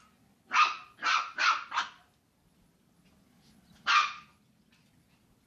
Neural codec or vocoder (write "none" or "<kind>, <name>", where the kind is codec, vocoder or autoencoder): none